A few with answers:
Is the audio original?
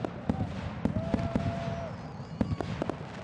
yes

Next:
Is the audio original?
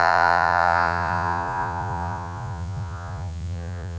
no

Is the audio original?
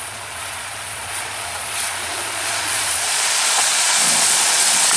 no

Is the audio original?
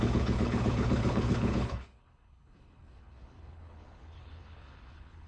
no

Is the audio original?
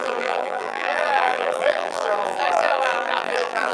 no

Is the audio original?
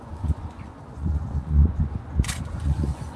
no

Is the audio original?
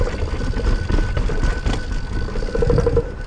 yes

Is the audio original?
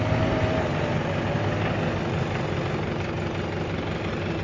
yes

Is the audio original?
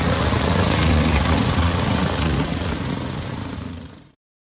no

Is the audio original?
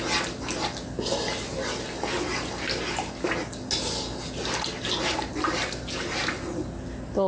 yes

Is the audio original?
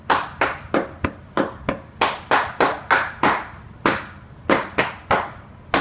yes